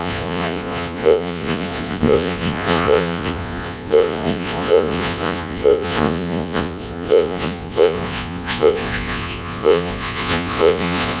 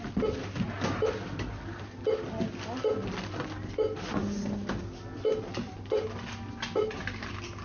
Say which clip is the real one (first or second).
second